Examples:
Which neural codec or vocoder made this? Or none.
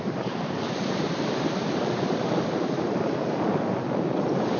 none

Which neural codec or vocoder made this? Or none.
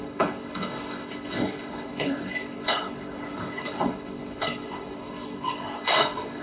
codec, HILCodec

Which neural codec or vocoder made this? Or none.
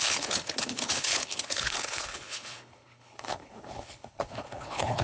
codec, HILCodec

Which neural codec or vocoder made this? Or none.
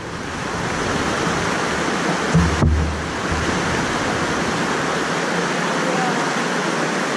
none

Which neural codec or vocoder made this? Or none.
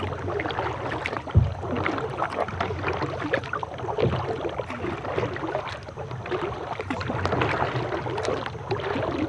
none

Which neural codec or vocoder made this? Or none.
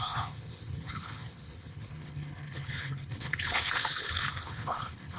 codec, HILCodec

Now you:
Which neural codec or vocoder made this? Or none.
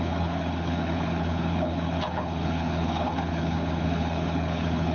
codec, HILCodec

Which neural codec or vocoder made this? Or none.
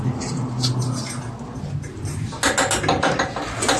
none